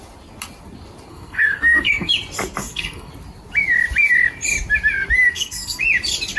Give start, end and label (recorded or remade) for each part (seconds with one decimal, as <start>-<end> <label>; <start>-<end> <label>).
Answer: 0.0-1.1 recorded; 1.1-2.1 remade; 2.1-2.6 recorded; 2.6-3.1 remade; 3.1-5.2 recorded; 5.2-5.8 remade; 5.8-6.4 recorded